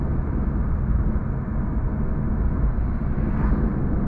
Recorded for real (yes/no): yes